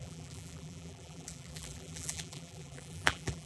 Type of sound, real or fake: fake